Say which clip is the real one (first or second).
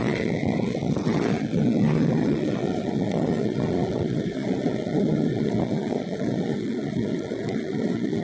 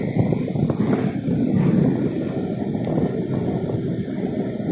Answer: second